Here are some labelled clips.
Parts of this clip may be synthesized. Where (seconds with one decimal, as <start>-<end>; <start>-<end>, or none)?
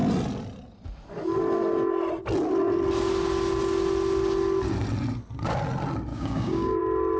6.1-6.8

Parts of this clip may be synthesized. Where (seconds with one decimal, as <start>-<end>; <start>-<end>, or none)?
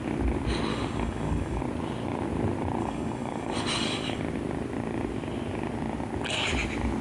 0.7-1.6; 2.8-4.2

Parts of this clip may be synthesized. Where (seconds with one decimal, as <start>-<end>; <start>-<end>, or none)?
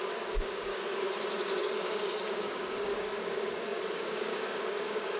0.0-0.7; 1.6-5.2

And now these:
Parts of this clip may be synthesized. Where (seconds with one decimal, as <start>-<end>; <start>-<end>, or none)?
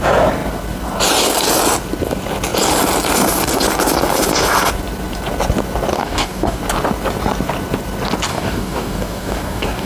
5.9-6.6; 8.3-9.9